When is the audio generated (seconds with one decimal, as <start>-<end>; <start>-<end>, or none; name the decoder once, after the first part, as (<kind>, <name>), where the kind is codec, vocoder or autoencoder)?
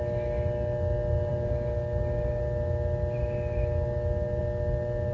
none